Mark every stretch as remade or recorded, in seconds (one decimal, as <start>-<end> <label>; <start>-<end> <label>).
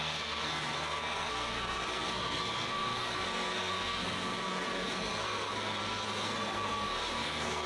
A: 0.0-7.7 remade